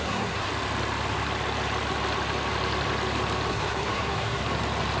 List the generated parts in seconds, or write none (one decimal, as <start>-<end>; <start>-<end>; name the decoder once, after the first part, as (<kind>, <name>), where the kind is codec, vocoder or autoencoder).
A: 0.0-0.5 (codec, SNAC); 3.5-4.4